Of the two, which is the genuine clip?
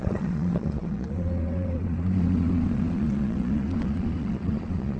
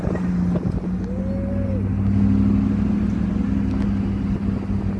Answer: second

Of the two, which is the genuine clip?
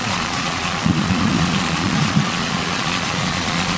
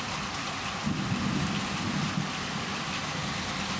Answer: second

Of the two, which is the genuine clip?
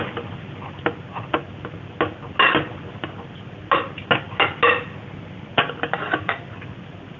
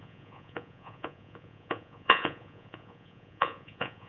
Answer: first